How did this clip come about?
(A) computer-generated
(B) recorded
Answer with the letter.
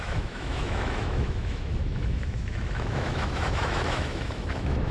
A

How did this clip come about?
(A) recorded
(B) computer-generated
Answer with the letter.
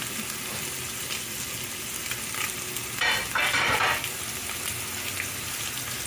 A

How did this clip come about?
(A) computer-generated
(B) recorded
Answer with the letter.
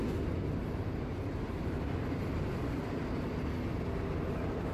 B